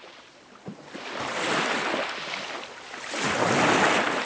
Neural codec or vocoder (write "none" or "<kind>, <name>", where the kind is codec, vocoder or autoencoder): none